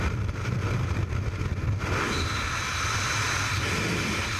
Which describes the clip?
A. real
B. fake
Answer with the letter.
A